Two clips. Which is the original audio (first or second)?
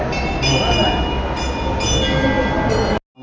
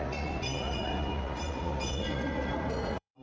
first